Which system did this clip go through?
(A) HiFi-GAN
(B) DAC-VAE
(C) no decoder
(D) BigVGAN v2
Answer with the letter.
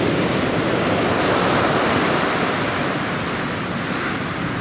C